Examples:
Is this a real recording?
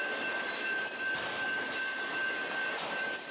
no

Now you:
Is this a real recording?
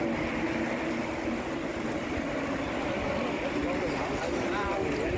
yes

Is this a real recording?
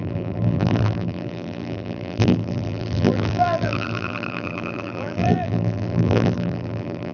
no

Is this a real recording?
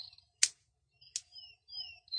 yes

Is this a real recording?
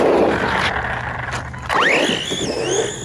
yes